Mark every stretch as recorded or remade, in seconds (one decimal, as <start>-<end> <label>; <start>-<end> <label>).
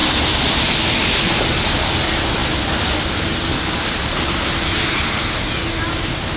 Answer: 0.0-6.4 recorded